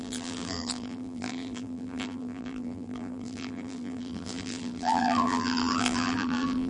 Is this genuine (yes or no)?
no